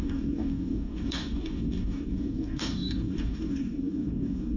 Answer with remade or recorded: remade